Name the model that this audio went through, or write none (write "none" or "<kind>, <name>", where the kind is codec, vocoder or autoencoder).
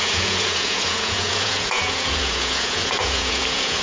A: vocoder, Vocos